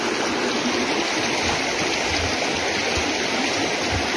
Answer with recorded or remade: recorded